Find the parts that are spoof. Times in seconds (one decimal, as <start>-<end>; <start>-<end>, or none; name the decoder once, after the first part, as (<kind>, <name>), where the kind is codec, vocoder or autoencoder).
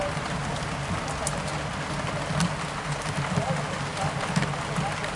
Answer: none